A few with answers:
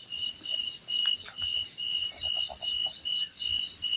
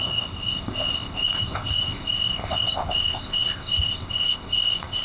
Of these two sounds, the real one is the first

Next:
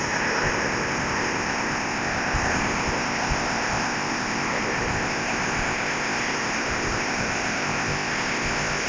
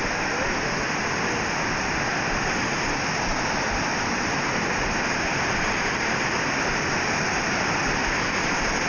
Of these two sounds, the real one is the second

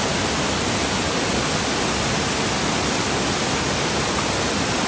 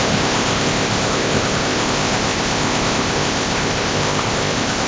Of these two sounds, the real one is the first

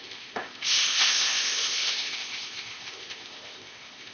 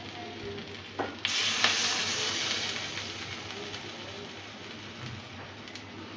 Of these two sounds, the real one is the second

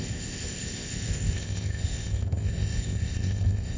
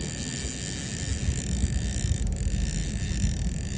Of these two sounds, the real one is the second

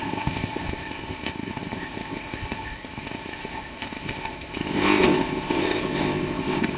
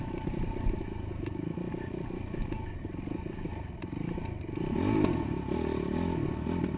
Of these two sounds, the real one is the second